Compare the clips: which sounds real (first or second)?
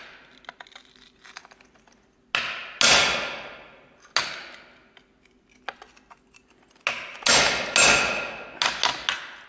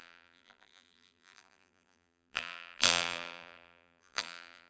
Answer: first